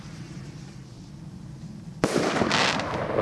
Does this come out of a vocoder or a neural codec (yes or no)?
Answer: no